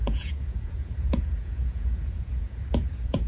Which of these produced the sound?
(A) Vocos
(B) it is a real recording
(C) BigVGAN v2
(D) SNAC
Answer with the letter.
A